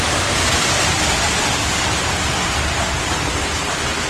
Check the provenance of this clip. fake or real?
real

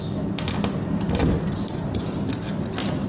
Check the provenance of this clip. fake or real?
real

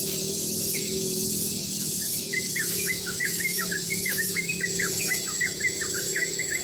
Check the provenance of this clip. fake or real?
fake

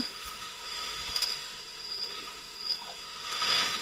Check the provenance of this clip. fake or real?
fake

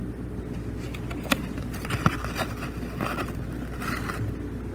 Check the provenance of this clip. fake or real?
real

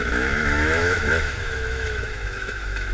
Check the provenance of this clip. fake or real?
fake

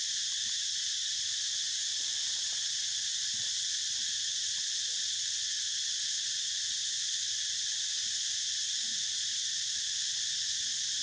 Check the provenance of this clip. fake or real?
real